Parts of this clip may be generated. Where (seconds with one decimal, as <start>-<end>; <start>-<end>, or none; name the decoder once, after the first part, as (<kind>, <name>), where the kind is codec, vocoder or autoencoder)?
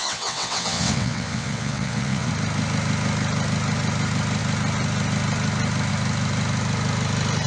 0.0-2.3 (vocoder, WaveNeXt)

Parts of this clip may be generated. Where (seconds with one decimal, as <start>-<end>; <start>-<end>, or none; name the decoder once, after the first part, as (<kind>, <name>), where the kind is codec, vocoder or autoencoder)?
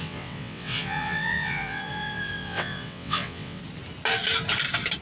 0.0-3.6 (vocoder, WaveNeXt)